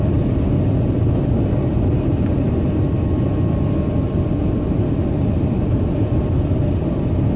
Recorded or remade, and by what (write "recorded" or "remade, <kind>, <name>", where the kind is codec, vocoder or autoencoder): recorded